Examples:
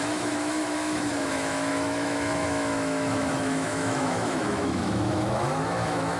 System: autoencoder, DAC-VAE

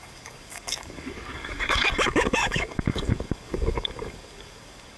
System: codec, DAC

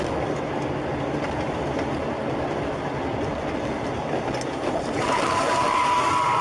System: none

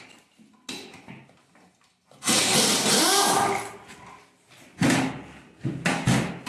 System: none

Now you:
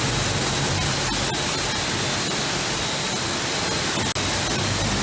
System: none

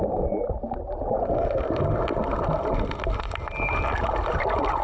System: none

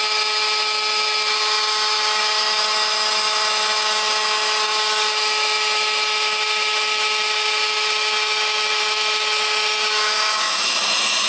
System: autoencoder, DAC-VAE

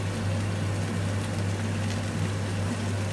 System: none